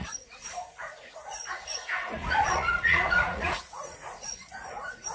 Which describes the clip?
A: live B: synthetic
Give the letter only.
B